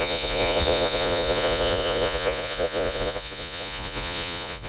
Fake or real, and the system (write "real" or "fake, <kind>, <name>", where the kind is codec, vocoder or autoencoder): fake, vocoder, Vocos